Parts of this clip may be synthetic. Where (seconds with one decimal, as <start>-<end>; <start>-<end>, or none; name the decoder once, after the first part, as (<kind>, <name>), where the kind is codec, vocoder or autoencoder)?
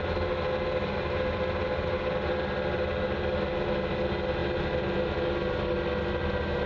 none